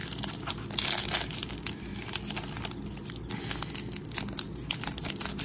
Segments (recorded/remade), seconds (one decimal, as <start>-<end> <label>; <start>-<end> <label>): 0.0-5.4 recorded

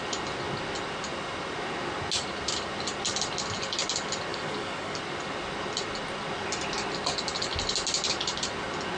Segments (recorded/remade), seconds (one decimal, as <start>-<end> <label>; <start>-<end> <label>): 0.0-4.3 recorded; 4.3-5.0 remade; 5.0-9.0 recorded

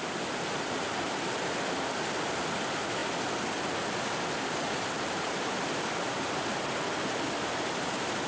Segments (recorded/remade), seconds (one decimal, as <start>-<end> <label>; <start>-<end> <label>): 0.0-8.3 recorded

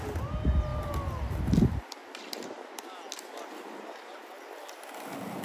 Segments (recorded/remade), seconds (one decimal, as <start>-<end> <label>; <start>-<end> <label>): 0.0-5.4 recorded